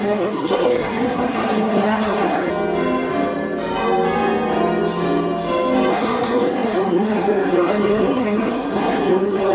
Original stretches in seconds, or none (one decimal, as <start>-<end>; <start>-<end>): 2.5-5.9